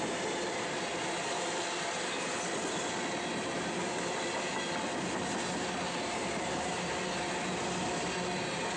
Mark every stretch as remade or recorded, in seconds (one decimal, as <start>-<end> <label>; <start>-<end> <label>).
0.0-8.8 recorded